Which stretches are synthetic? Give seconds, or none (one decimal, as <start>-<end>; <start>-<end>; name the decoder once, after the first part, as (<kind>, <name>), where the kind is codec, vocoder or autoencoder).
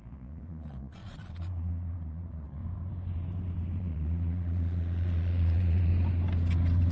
0.0-2.6 (vocoder, Vocos); 3.8-5.9